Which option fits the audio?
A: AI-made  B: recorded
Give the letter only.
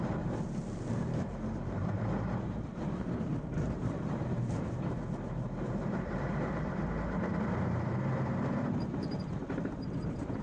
A